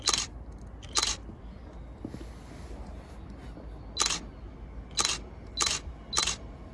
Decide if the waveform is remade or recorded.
recorded